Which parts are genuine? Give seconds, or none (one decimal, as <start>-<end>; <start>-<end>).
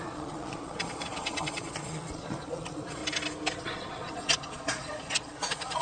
3.0-3.6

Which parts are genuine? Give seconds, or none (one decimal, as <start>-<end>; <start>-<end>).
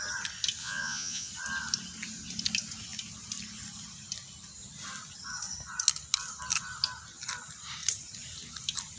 0.0-0.6; 1.3-9.0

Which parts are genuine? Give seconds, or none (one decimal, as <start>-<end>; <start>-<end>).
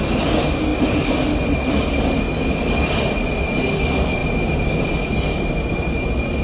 0.0-6.4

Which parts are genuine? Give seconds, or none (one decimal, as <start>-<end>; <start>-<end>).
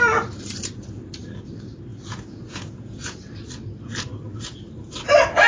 0.0-1.9; 3.2-5.5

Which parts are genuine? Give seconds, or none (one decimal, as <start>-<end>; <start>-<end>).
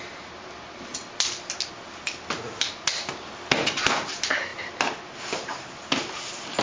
0.0-6.6